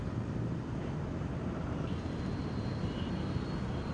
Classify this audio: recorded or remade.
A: recorded